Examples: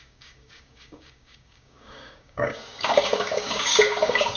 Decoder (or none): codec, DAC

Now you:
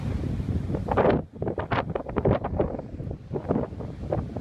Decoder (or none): none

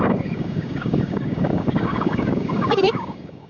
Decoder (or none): codec, DAC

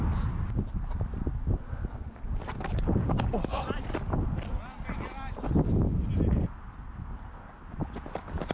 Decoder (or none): none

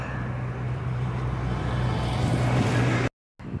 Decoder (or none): none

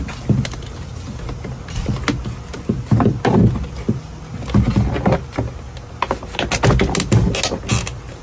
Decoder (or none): none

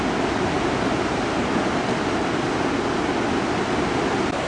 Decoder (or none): none